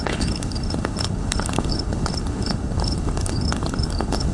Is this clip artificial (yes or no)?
yes